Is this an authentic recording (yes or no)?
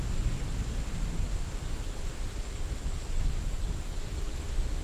yes